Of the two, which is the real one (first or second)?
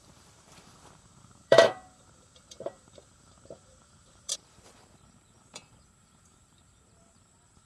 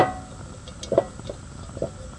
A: second